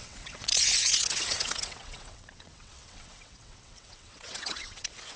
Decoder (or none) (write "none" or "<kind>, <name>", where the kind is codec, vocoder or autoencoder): vocoder, WaveNeXt